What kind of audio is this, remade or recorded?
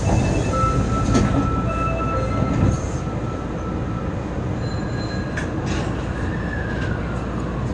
recorded